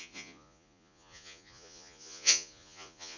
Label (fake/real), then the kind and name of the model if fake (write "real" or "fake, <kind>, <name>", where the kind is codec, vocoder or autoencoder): fake, vocoder, Vocos